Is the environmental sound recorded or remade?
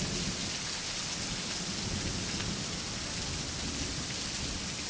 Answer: recorded